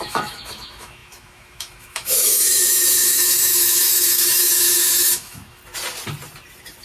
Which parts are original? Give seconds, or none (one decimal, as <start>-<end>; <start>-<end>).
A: 5.6-6.8

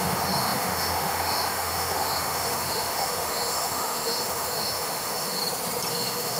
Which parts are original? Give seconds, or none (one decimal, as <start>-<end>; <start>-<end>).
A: 5.4-5.9

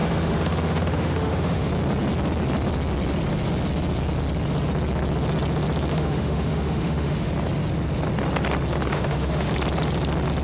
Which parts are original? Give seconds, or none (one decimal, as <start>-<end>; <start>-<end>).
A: 1.7-5.9; 7.3-8.9; 9.5-10.4